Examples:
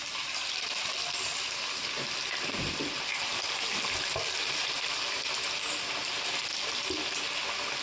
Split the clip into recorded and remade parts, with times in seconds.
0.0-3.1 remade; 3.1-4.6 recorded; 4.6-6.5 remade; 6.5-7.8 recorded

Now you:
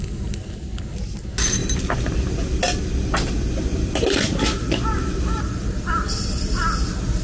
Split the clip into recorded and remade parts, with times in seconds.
0.0-7.2 recorded

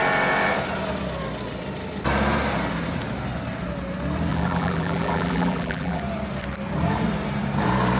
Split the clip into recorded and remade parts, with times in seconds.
0.0-4.3 recorded; 4.3-6.0 remade; 6.0-8.0 recorded

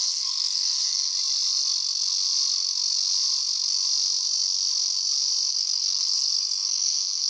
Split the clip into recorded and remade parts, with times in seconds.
0.0-1.1 remade; 1.1-5.5 recorded; 5.5-7.3 remade

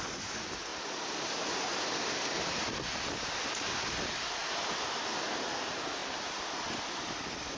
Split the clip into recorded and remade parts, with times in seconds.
0.0-0.7 recorded; 0.7-3.1 remade; 3.1-4.4 recorded; 4.4-5.0 remade; 5.0-7.6 recorded

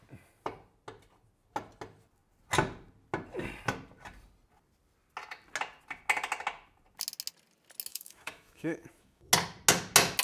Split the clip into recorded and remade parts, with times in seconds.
0.0-7.9 recorded; 7.9-9.3 remade; 9.3-10.2 recorded

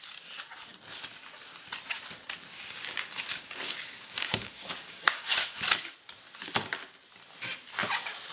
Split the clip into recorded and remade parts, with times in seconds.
0.0-2.5 recorded; 2.5-5.3 remade; 5.3-8.3 recorded

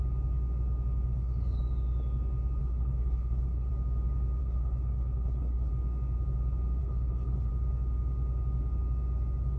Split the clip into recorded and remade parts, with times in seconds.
0.0-1.1 recorded; 1.1-1.6 remade; 1.6-2.6 recorded; 2.6-3.7 remade; 3.7-4.4 recorded; 4.4-5.7 remade; 5.7-6.8 recorded; 6.8-7.5 remade; 7.5-9.6 recorded